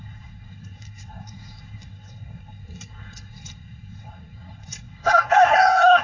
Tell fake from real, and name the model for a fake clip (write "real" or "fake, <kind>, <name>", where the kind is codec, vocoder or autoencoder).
fake, codec, SNAC